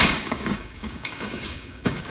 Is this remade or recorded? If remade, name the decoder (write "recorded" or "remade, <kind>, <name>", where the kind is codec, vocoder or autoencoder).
remade, codec, DAC